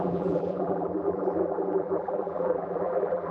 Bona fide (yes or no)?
no